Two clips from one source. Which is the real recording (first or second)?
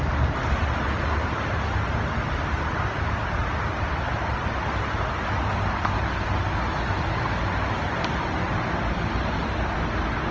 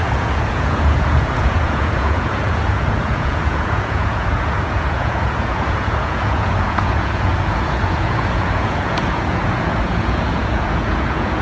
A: first